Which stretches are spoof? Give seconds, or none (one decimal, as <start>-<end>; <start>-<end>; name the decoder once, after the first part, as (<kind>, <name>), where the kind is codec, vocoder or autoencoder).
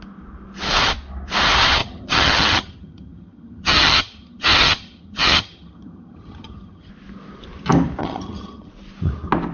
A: 1.8-6.9 (vocoder, HiFi-GAN); 8.0-8.7